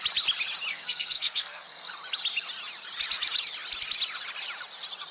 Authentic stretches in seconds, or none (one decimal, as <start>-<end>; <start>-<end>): 0.0-0.7; 1.9-5.1